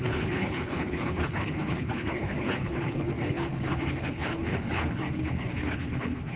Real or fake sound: fake